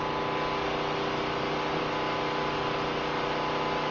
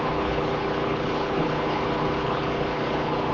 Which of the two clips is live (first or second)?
first